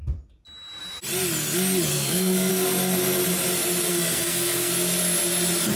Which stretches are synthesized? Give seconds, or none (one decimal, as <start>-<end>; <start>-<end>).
1.9-2.5; 3.9-4.7